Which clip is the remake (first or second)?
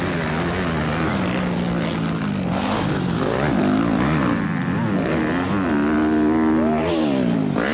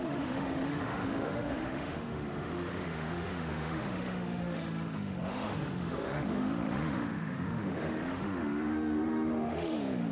second